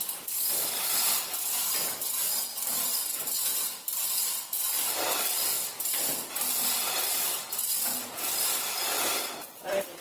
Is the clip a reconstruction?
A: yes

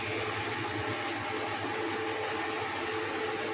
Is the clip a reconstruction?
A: no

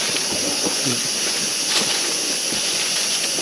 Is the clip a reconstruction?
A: yes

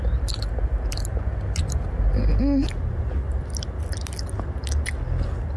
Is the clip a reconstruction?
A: no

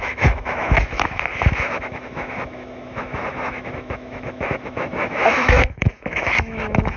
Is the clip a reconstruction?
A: yes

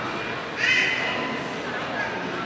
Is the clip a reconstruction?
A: no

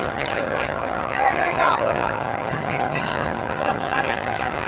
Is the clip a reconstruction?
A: yes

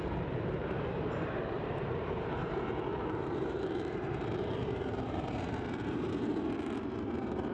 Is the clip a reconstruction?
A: yes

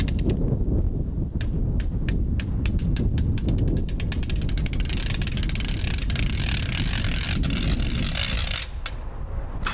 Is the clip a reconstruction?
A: no